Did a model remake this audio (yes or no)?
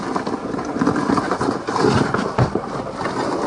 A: no